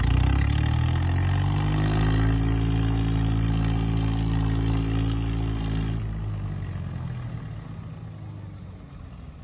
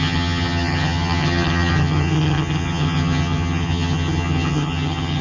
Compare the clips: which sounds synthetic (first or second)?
second